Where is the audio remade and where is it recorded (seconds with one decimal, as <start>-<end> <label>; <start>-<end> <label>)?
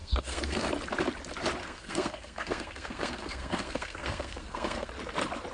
0.0-0.7 remade; 0.7-1.6 recorded; 1.6-4.9 remade; 4.9-5.5 recorded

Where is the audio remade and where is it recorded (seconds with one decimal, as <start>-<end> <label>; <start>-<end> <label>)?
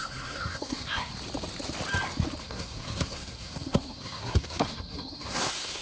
0.0-1.1 remade; 1.1-2.4 recorded; 2.4-5.8 remade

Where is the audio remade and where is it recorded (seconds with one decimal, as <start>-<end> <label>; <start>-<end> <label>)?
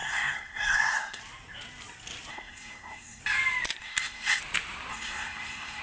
0.0-1.2 remade; 1.2-2.3 recorded; 2.3-3.2 remade; 3.2-3.8 recorded; 3.8-4.4 remade; 4.4-4.9 recorded; 4.9-5.8 remade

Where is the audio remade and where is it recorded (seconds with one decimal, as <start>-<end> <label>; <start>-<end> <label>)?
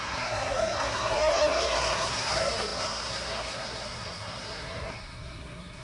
0.0-5.8 remade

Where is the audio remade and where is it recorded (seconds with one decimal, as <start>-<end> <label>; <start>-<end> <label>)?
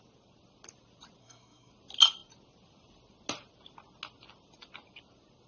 0.0-1.2 recorded; 1.2-1.7 remade; 1.7-5.5 recorded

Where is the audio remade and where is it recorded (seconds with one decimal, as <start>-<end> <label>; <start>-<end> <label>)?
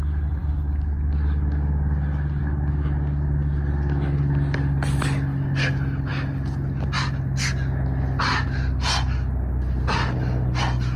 0.0-11.0 recorded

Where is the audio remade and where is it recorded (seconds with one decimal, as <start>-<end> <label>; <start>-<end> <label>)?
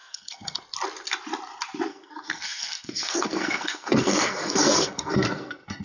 0.0-0.6 remade; 0.6-1.9 recorded; 1.9-5.8 remade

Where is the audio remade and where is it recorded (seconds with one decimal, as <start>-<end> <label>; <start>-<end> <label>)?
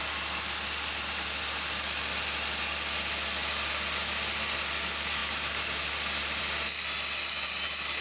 0.0-8.0 recorded